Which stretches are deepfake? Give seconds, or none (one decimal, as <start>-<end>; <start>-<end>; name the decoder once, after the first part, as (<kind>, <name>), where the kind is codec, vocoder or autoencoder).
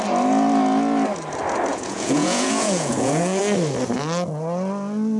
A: 1.7-3.4 (vocoder, Vocos)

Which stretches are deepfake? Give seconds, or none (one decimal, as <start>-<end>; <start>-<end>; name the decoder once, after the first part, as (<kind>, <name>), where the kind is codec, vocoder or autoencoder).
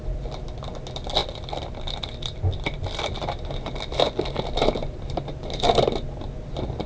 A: 1.2-3.2 (vocoder, BigVGAN v2); 4.8-5.6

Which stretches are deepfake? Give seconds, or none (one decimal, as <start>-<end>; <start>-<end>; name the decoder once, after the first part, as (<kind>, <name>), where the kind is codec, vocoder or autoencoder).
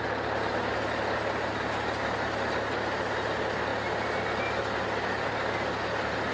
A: none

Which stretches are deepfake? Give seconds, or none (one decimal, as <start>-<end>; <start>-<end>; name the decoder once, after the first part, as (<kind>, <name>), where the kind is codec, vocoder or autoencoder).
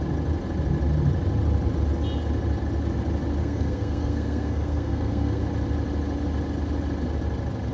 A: 3.4-5.4 (codec, SNAC)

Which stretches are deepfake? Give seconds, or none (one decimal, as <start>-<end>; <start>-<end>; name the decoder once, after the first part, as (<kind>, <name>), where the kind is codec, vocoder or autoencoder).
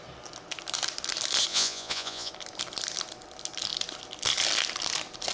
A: 1.5-2.3 (vocoder, Vocos)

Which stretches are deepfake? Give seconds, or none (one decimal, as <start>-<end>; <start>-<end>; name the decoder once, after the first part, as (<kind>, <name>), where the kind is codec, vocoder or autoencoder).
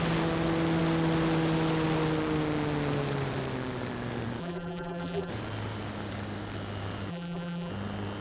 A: 4.4-5.3 (vocoder, BigVGAN v2); 7.1-7.7